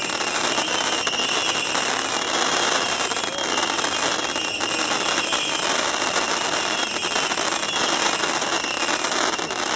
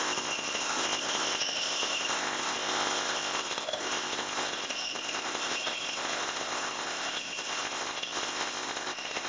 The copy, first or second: second